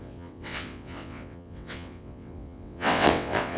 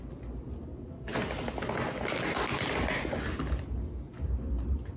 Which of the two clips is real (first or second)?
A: second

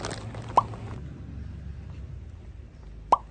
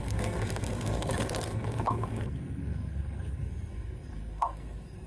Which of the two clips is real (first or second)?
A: first